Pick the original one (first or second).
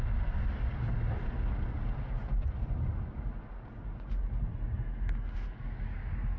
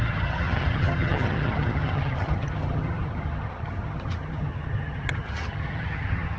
first